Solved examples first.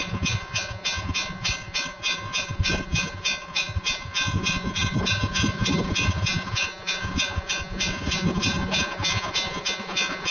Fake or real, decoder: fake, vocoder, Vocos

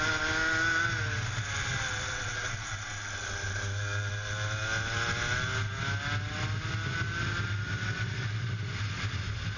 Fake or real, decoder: real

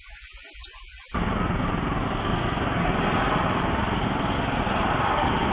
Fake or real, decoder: real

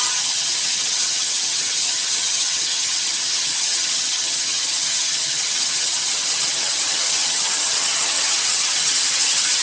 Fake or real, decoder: fake, vocoder, HiFi-GAN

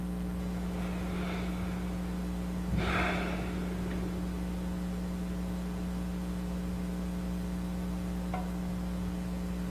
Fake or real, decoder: fake, vocoder, BigVGAN v2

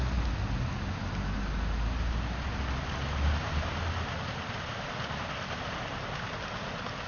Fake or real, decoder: real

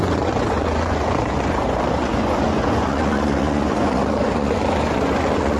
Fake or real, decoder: fake, vocoder, Vocos